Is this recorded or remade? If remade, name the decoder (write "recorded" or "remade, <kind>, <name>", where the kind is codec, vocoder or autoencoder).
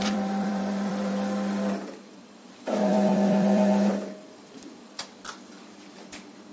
remade, vocoder, BigVGAN v2